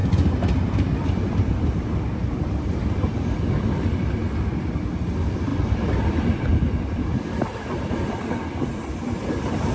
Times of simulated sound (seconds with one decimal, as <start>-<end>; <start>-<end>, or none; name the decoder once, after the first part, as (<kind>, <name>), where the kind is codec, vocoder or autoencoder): 0.0-9.7 (vocoder, BigVGAN v2)